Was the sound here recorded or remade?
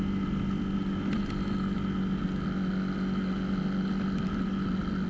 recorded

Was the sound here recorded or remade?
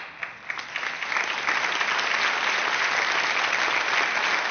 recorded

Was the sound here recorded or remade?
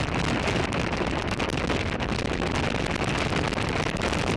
recorded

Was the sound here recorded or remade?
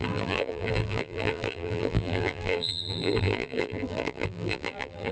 remade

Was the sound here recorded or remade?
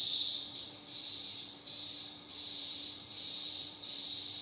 remade